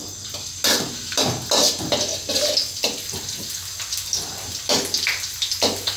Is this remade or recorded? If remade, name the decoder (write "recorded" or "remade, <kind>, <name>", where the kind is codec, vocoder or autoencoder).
recorded